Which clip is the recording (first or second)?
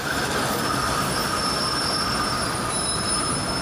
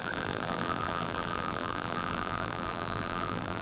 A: first